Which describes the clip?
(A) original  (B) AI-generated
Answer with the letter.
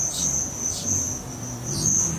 A